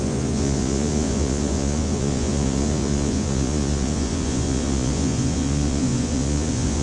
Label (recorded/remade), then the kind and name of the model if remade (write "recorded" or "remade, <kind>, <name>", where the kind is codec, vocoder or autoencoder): remade, vocoder, Vocos